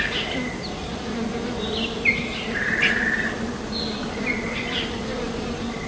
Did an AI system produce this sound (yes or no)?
no